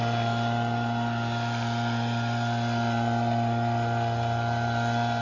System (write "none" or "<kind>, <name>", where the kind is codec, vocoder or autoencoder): none